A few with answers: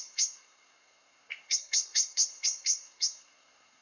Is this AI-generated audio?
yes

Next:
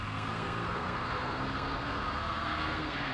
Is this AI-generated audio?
yes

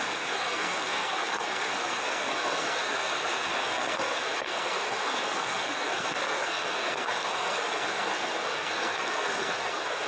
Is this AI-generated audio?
yes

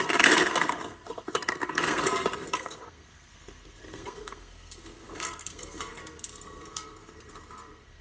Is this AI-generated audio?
yes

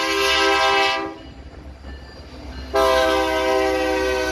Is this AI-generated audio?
no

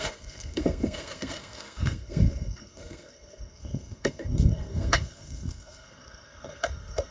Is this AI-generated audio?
yes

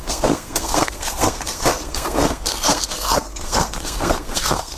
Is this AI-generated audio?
yes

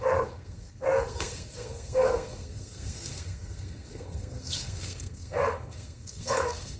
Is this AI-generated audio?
yes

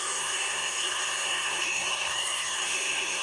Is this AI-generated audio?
yes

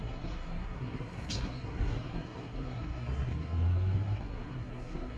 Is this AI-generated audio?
yes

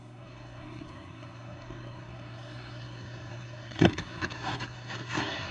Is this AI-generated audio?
yes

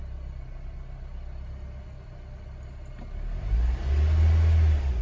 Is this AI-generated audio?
no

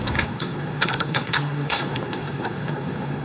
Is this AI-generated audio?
yes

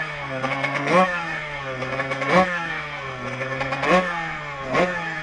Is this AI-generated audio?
yes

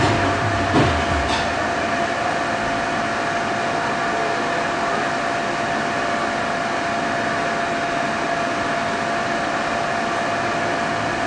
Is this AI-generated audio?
no